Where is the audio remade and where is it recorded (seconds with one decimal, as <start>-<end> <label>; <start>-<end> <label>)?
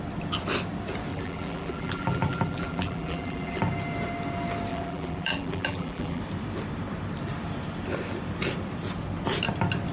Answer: 0.0-1.1 recorded; 1.1-3.6 remade; 3.6-4.7 recorded; 4.7-6.2 remade; 6.2-9.9 recorded